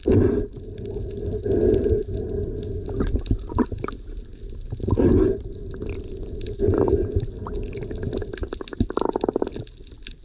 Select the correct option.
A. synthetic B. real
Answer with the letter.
B